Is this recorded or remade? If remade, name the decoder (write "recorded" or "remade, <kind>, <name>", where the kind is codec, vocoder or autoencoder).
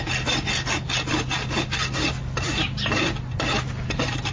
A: recorded